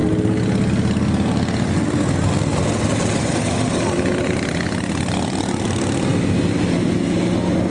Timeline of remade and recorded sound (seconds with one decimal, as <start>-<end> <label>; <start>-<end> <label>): 0.0-7.7 recorded